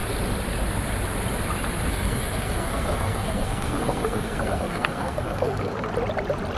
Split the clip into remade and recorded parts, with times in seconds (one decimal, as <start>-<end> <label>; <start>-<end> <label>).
0.0-1.9 recorded; 1.9-5.9 remade; 5.9-6.6 recorded